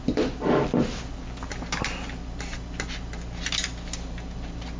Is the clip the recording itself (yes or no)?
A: yes